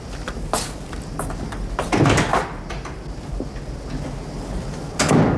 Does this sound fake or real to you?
real